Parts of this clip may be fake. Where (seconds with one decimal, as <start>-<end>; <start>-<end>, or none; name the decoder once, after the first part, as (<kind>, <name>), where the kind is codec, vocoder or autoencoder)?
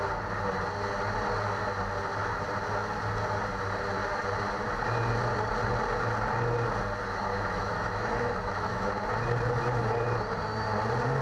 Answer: 7.3-8.9 (autoencoder, DAC-VAE)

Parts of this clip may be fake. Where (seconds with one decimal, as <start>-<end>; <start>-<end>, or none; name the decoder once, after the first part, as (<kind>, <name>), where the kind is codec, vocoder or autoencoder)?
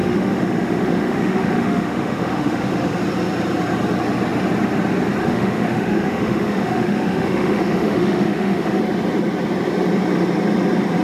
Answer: 0.0-3.0 (autoencoder, DAC-VAE); 5.2-8.8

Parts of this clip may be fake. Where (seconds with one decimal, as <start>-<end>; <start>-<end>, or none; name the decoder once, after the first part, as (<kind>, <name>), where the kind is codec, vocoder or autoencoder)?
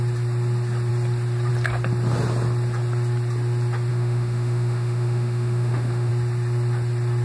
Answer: 3.9-6.1 (autoencoder, DAC-VAE)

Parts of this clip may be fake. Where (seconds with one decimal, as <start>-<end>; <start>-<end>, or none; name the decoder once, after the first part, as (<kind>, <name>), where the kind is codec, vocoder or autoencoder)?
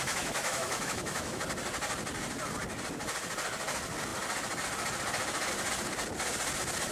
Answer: 0.0-1.4 (autoencoder, DAC-VAE)